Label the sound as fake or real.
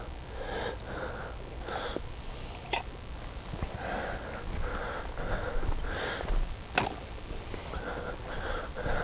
real